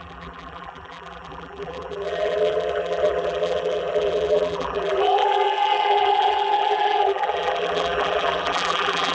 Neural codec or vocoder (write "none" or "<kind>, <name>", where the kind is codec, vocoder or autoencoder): vocoder, BigVGAN v2